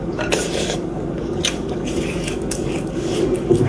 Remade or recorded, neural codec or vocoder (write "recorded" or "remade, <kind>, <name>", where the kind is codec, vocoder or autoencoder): remade, codec, DAC